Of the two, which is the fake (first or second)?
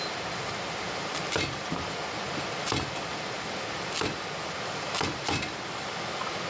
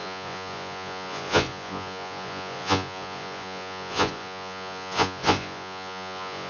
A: second